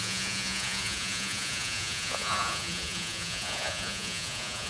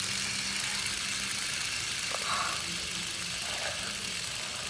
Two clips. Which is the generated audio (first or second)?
first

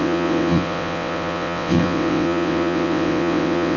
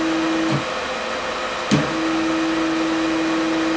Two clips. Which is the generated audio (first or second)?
first